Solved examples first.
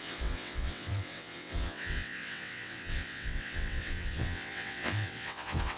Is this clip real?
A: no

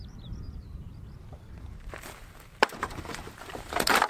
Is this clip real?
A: no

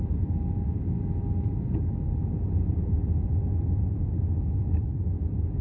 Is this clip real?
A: yes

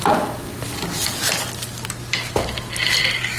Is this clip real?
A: yes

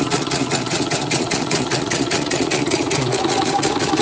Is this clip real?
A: no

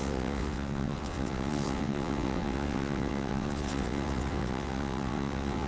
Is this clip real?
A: no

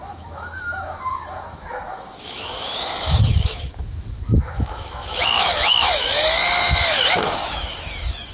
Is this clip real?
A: no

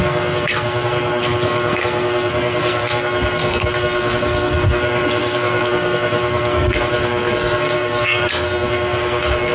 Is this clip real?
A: no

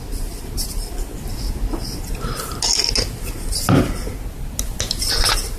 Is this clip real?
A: yes